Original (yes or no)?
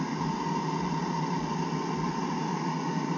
yes